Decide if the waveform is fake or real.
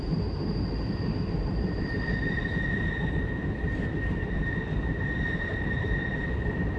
fake